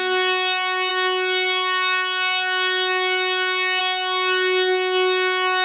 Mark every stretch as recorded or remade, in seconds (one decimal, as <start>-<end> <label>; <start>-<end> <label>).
0.0-5.6 recorded